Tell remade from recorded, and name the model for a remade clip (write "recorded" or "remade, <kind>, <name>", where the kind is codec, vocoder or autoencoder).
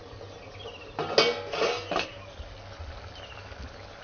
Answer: recorded